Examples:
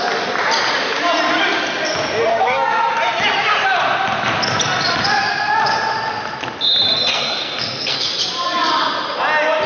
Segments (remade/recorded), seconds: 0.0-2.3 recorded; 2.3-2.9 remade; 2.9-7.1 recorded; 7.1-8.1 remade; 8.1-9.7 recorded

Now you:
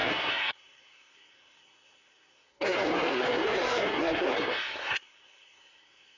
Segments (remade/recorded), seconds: 0.0-6.2 remade

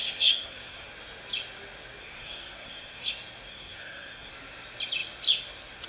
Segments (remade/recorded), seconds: 0.0-0.9 remade; 0.9-2.0 recorded; 2.0-3.1 remade; 3.1-3.5 recorded; 3.5-4.3 remade; 4.3-5.9 recorded

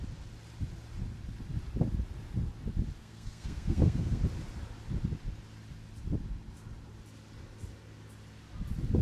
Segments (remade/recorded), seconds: 0.0-3.0 recorded; 3.0-4.2 remade; 4.2-9.0 recorded

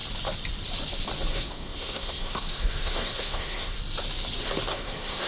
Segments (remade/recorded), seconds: 0.0-1.3 recorded; 1.3-3.8 remade; 3.8-4.7 recorded; 4.7-5.3 remade

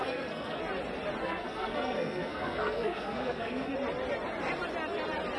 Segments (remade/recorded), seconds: 0.0-0.6 remade; 0.6-1.2 recorded; 1.2-3.7 remade; 3.7-5.4 recorded

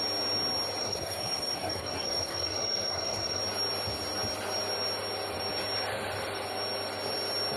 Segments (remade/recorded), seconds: 0.0-0.8 recorded; 0.8-3.4 remade; 3.4-7.6 recorded